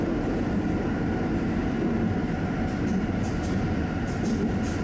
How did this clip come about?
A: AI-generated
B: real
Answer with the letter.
B